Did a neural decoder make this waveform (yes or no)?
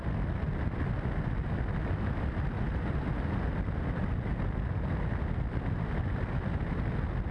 no